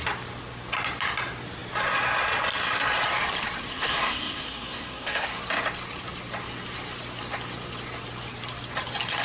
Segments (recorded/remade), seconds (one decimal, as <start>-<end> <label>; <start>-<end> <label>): 0.0-3.7 recorded; 3.7-5.4 remade; 5.4-9.2 recorded